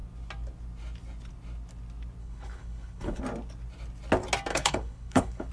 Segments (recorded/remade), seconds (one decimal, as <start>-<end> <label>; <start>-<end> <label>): 0.0-2.2 recorded; 2.2-3.2 remade; 3.2-4.5 recorded; 4.5-5.5 remade